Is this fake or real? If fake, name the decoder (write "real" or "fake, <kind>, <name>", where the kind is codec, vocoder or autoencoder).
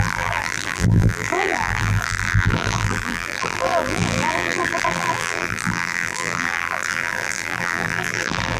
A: fake, vocoder, BigVGAN v2